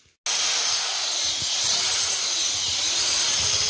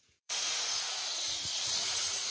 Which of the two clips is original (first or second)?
first